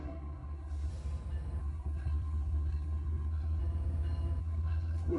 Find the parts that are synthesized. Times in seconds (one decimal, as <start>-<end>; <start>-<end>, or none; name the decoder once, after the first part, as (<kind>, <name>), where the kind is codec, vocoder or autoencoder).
0.0-0.9 (codec, SNAC); 1.6-3.6; 4.4-5.2